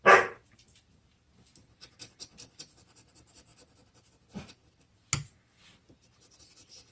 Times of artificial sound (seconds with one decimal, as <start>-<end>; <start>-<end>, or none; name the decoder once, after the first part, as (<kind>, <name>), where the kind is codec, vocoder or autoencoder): none